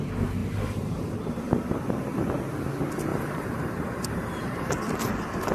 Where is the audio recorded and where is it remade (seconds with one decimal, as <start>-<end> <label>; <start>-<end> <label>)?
0.0-0.4 recorded; 0.4-1.3 remade; 1.3-3.1 recorded; 3.1-4.7 remade; 4.7-5.5 recorded